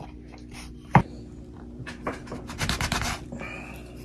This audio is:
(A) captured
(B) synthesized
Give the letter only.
A